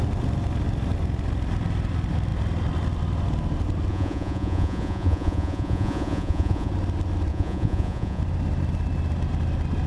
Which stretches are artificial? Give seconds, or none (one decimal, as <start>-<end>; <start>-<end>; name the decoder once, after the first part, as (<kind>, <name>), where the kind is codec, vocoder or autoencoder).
3.9-6.7 (vocoder, Vocos); 7.3-8.2